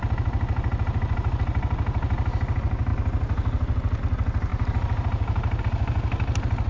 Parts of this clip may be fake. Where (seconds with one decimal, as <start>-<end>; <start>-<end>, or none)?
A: 4.5-5.6